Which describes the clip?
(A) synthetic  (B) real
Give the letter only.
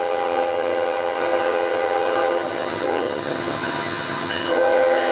A